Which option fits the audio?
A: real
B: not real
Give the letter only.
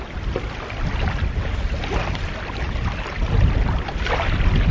A